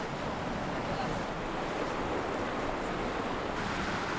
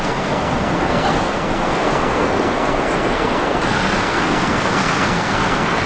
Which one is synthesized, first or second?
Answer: second